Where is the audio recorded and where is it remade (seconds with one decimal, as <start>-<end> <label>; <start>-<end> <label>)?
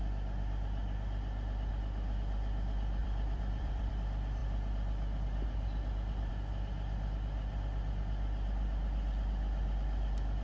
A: 0.0-0.8 recorded; 0.8-1.7 remade; 1.7-3.0 recorded; 3.0-3.9 remade; 3.9-10.4 recorded